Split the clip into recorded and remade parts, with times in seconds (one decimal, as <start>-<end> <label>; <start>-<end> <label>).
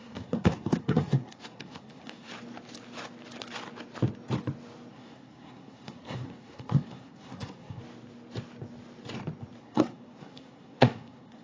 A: 0.0-2.3 remade; 2.3-4.9 recorded; 4.9-7.8 remade; 7.8-9.6 recorded; 9.6-11.4 remade